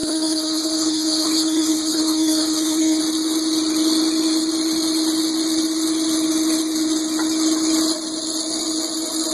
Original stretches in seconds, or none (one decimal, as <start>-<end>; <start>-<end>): 3.0-9.3